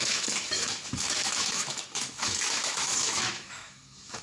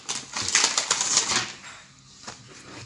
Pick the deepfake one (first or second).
first